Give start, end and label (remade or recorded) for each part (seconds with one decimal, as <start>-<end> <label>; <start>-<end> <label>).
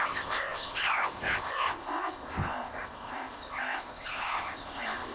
0.0-5.1 remade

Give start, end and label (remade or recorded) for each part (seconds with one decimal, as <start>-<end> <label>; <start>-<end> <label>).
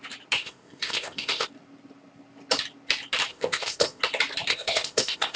0.0-0.4 recorded; 0.4-1.5 remade; 1.5-3.3 recorded; 3.3-4.0 remade; 4.0-4.5 recorded; 4.5-5.4 remade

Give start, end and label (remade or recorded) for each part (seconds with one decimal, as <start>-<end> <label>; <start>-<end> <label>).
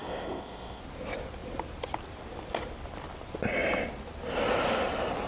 0.0-0.8 remade; 0.8-5.3 recorded